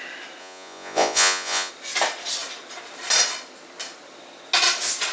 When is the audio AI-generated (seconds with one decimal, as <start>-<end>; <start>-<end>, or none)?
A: 0.4-1.7